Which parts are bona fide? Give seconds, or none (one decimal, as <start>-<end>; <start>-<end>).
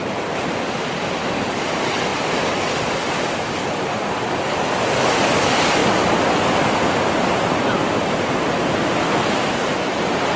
0.0-10.4